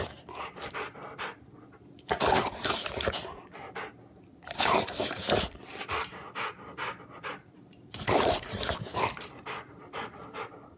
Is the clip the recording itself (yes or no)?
no